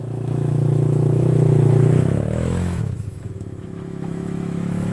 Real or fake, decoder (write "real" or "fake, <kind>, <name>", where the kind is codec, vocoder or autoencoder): fake, autoencoder, DAC-VAE